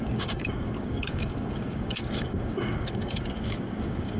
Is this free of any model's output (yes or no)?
no